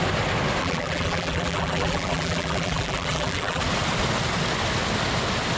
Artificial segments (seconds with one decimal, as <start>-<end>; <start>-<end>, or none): 0.6-3.6